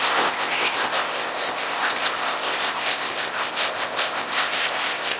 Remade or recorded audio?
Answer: remade